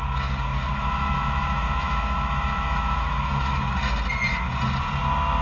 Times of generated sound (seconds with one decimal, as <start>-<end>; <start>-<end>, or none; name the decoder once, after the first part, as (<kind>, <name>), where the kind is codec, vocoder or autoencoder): 0.7-3.7 (autoencoder, DAC-VAE)